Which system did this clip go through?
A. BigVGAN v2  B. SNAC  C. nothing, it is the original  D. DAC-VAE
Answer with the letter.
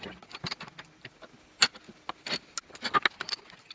C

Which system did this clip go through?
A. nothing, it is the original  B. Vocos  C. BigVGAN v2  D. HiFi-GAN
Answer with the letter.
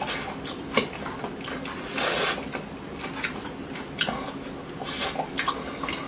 A